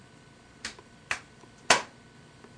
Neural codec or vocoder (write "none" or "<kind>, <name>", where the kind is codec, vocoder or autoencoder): none